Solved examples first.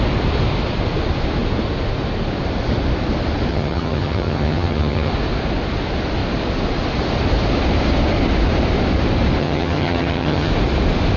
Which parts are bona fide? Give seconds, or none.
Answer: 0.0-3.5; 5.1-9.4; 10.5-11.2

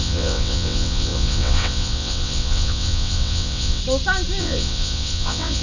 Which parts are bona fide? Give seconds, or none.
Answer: 3.8-4.4

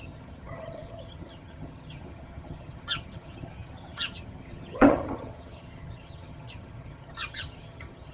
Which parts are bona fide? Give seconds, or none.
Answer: none